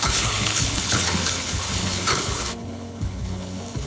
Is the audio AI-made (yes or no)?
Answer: yes